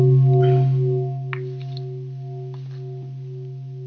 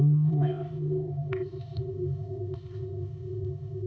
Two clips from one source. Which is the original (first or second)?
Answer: first